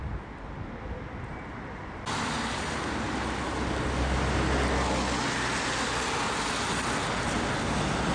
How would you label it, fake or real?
real